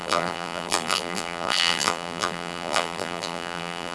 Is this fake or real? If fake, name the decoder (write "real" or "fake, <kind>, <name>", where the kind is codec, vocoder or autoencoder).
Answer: fake, vocoder, BigVGAN v2